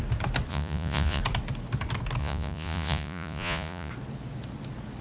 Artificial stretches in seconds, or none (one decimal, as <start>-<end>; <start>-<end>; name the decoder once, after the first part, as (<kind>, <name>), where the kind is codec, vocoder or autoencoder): 0.5-1.2 (vocoder, Vocos); 2.2-3.9